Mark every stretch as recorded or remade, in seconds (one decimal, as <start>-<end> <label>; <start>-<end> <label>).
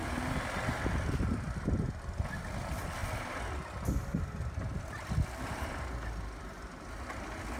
0.0-7.6 recorded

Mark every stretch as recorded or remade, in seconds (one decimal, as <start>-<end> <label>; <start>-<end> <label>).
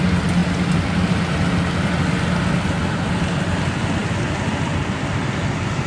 0.0-5.9 recorded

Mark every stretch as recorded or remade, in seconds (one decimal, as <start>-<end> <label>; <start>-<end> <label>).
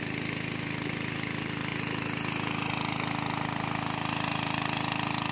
0.0-5.3 recorded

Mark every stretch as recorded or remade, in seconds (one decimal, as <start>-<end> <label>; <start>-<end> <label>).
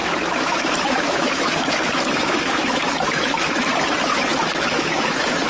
0.0-5.5 remade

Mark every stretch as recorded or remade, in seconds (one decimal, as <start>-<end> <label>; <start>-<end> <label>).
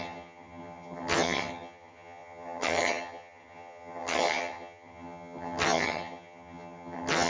0.0-7.3 remade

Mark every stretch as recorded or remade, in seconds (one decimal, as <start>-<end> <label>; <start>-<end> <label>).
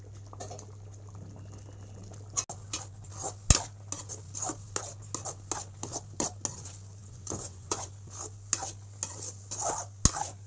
0.0-7.0 recorded; 7.0-7.9 remade; 7.9-10.5 recorded